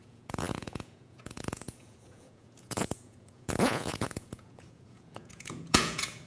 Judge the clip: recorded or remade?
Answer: remade